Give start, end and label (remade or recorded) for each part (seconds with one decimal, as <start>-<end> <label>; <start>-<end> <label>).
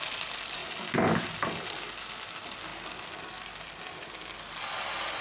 0.0-5.2 recorded